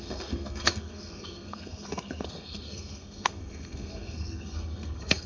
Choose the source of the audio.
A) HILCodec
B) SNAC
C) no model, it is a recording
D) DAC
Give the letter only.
B